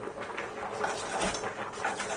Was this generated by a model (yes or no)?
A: no